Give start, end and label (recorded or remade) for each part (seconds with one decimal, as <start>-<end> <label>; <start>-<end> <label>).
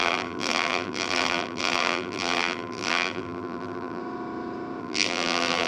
0.0-4.0 remade; 4.0-4.8 recorded; 4.8-5.7 remade